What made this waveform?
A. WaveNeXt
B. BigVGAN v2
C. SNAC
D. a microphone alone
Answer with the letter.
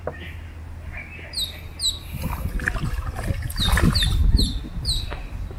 D